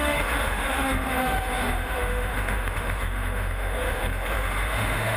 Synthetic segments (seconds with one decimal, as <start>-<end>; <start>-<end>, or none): 0.0-5.2